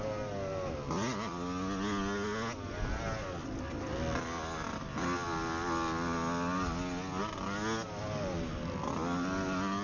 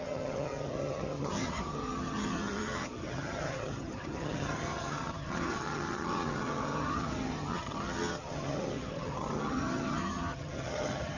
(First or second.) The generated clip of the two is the second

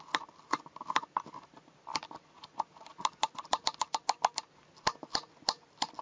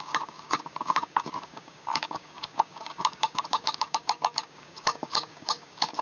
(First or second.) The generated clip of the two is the second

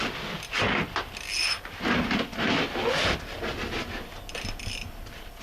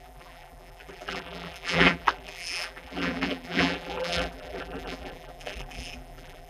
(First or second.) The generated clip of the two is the second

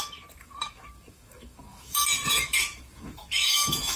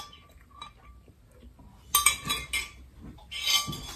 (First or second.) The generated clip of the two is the first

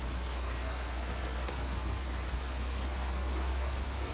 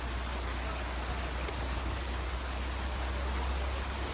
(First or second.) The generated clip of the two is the first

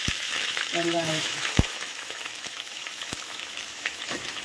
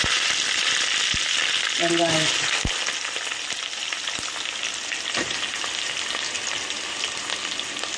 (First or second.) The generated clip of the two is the first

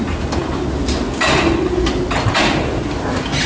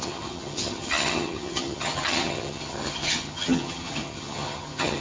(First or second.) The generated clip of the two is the second